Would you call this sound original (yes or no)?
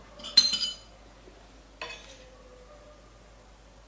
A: yes